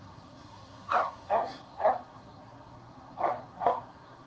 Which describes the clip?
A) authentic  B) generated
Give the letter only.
B